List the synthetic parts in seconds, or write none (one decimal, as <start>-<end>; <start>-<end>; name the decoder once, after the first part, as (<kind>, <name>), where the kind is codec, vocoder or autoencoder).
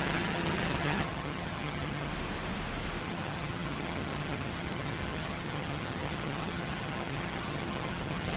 0.0-2.1 (vocoder, HiFi-GAN); 3.0-8.4